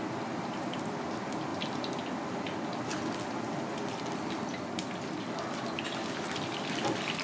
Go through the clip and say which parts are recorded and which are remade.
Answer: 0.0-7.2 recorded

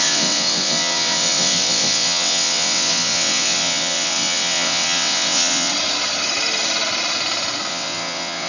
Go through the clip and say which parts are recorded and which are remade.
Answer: 0.0-5.7 remade; 5.7-7.7 recorded; 7.7-8.5 remade

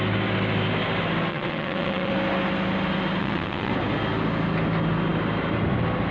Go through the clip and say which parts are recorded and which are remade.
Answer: 0.0-1.3 recorded; 1.3-2.1 remade; 2.1-3.2 recorded; 3.2-3.7 remade; 3.7-6.1 recorded

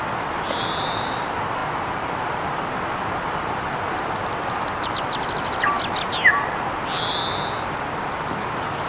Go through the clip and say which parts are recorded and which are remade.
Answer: 0.0-8.9 recorded

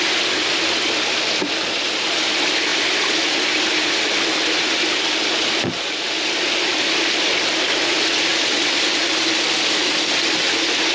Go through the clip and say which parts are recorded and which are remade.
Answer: 0.0-10.9 recorded

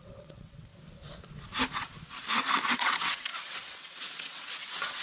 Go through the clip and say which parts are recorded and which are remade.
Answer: 0.0-0.7 remade; 0.7-2.7 recorded; 2.7-5.0 remade

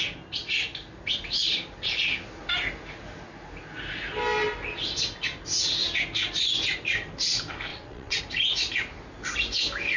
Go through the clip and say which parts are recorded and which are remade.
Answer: 0.0-7.7 recorded; 7.7-8.2 remade; 8.2-10.0 recorded

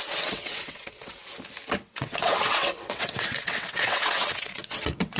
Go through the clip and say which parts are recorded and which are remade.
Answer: 0.0-1.2 remade; 1.2-1.9 recorded; 1.9-5.2 remade